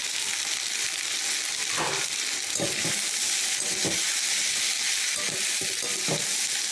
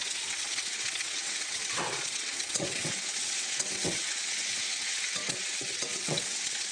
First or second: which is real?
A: first